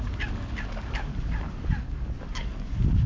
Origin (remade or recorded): remade